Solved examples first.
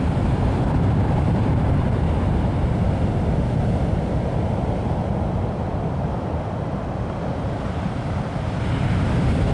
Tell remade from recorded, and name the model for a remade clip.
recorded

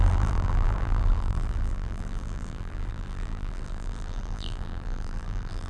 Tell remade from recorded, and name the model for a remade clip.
remade, vocoder, BigVGAN v2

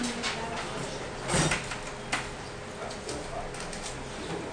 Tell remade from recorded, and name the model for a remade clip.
recorded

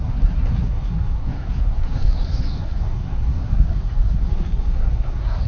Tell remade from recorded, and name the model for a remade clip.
remade, codec, SNAC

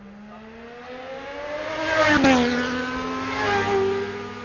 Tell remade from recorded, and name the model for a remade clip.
recorded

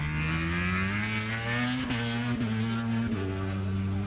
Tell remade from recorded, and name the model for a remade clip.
recorded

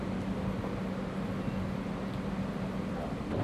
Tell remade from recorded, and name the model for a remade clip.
recorded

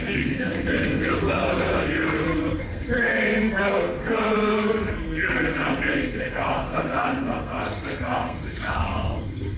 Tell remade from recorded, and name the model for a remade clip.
remade, codec, SNAC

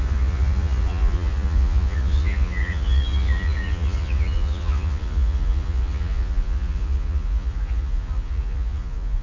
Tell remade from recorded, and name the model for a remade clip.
remade, vocoder, Vocos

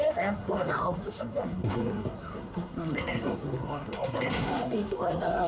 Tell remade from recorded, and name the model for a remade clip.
remade, codec, SNAC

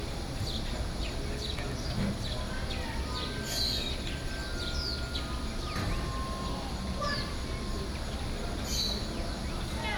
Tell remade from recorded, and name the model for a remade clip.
recorded